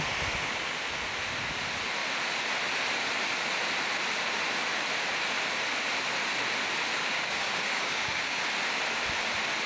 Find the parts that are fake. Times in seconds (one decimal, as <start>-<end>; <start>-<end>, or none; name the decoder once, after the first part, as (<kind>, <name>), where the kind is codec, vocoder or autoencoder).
7.0-8.4 (codec, DAC)